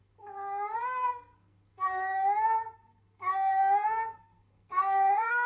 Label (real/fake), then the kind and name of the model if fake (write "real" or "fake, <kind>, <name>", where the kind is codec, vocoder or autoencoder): fake, codec, SNAC